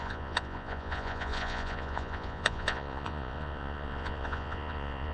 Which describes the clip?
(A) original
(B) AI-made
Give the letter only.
B